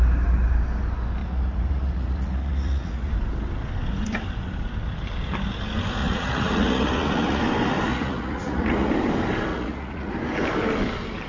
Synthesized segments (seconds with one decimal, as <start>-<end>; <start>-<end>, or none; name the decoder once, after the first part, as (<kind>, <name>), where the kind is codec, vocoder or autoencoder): 1.2-3.1 (vocoder, Vocos); 6.0-7.4; 7.9-8.9; 9.5-10.1